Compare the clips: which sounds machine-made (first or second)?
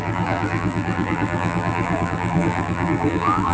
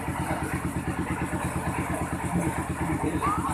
first